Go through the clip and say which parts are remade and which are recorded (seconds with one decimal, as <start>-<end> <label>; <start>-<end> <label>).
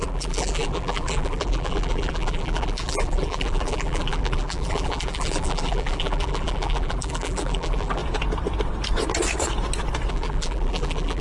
0.0-8.0 remade; 8.0-10.1 recorded; 10.1-11.2 remade